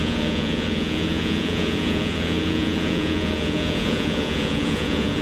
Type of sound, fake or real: fake